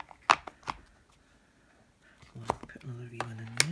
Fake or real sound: real